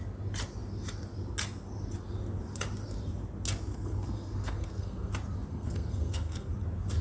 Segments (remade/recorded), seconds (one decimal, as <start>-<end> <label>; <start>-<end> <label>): 0.0-3.7 recorded; 3.7-5.1 remade; 5.1-5.5 recorded; 5.5-6.5 remade; 6.5-7.0 recorded